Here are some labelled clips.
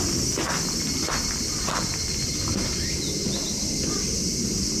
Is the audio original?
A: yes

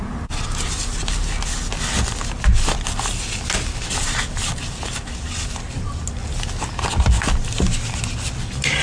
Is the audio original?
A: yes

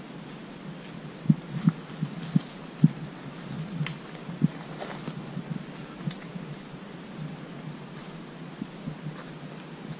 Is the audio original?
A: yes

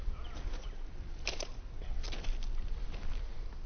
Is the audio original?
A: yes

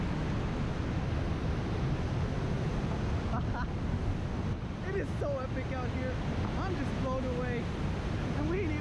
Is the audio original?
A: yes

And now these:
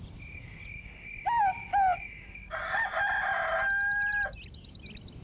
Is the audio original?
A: yes